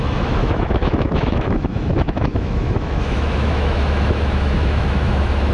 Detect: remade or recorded remade